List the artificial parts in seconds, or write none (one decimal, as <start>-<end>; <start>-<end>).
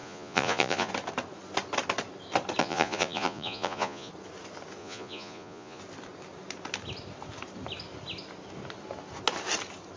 0.0-0.9; 2.6-4.1; 4.8-5.8